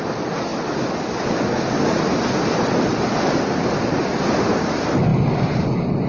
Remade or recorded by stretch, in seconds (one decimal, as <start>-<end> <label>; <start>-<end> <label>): 0.0-5.1 recorded; 5.1-6.1 remade